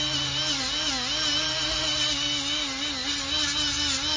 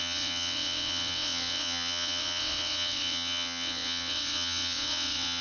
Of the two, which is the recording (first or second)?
first